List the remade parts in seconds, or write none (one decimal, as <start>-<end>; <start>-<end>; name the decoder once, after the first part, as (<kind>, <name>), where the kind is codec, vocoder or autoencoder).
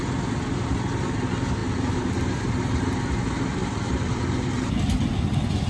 3.6-4.7 (vocoder, BigVGAN v2)